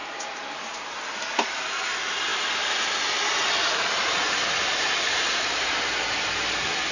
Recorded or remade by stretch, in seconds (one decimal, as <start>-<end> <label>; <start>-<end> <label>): 0.0-0.6 remade; 0.6-2.3 recorded; 2.3-2.9 remade; 2.9-4.2 recorded; 4.2-5.9 remade; 5.9-6.9 recorded